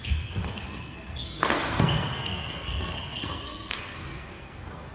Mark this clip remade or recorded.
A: remade